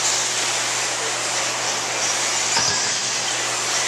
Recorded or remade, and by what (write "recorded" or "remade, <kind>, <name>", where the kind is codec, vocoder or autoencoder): recorded